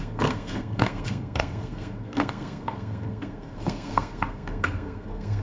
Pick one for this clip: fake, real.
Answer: fake